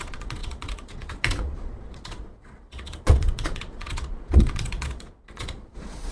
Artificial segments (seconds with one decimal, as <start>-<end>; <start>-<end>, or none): 0.0-6.1